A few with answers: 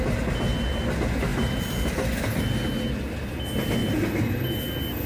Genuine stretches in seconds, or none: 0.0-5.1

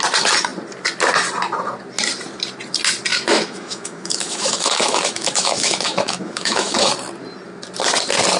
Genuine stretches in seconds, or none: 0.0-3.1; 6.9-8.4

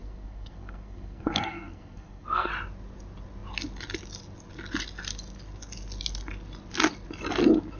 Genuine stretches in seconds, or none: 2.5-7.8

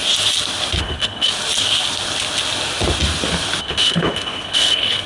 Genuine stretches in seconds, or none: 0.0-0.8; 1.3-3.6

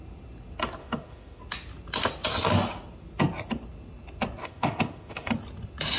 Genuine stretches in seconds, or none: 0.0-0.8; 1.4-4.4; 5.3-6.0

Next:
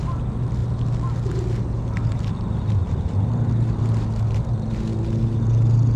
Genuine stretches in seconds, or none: 0.0-6.0

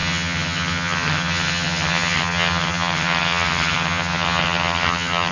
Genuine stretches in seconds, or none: none